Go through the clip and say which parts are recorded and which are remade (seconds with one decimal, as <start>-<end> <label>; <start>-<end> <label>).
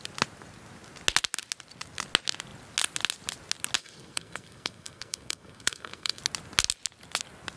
0.0-3.8 recorded; 3.8-6.2 remade; 6.2-7.6 recorded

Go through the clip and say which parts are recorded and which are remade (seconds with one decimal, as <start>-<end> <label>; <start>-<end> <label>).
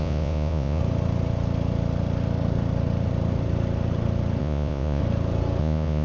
0.0-0.8 remade; 0.8-4.4 recorded; 4.4-5.0 remade; 5.0-5.6 recorded; 5.6-6.0 remade